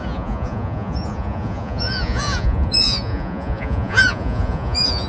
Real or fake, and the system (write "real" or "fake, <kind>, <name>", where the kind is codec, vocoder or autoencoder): fake, vocoder, Vocos